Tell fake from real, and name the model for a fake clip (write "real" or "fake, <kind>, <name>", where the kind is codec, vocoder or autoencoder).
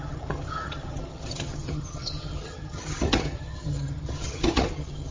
fake, vocoder, HiFi-GAN